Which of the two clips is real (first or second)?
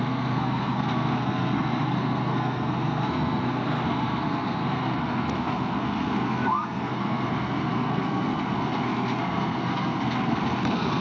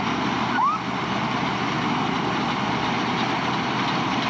second